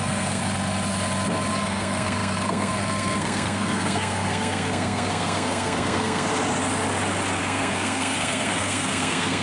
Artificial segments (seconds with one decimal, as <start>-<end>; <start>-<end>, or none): 0.0-0.4; 1.5-6.3; 7.4-9.4